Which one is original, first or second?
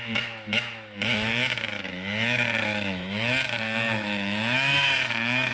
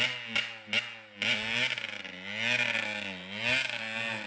second